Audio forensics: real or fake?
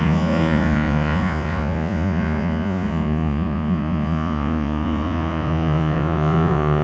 fake